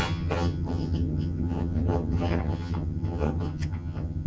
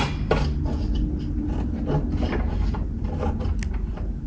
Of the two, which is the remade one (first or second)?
first